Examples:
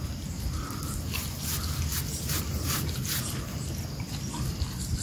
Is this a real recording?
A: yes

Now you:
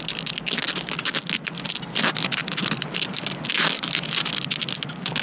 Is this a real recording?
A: yes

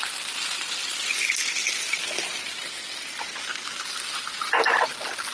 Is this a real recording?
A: yes